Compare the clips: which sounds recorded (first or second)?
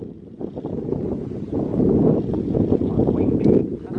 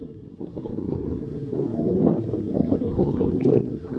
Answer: first